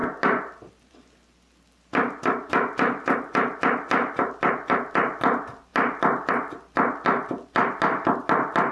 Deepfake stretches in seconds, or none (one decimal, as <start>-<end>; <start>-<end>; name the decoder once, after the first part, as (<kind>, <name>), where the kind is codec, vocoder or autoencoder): none